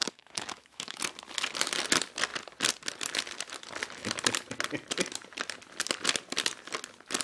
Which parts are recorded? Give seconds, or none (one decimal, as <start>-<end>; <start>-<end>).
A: 1.0-7.2